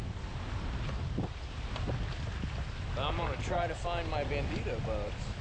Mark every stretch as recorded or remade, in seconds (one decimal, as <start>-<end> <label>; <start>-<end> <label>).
0.0-5.4 recorded